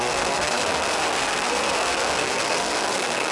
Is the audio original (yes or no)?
no